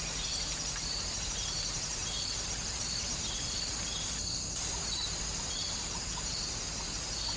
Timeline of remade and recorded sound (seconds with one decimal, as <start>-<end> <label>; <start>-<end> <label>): 0.0-7.4 recorded